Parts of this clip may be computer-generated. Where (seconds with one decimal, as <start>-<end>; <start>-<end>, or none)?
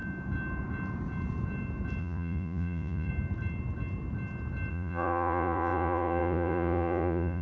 2.0-3.1; 4.7-7.4